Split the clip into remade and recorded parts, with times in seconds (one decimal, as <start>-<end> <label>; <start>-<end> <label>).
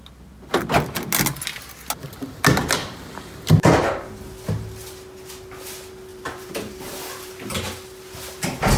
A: 0.0-2.8 recorded; 2.8-3.8 remade; 3.8-6.1 recorded; 6.1-7.3 remade; 7.3-8.8 recorded